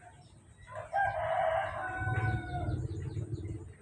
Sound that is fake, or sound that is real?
real